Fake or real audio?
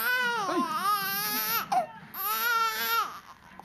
real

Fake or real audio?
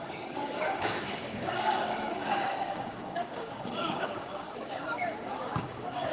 fake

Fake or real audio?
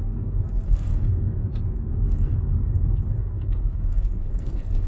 fake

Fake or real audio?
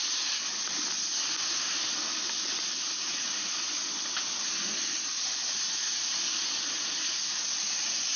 real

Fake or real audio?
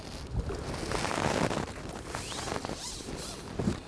real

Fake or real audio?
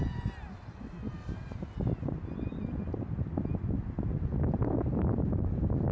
real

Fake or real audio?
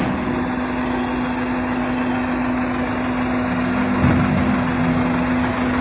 real